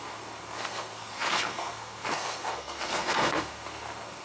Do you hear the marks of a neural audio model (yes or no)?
yes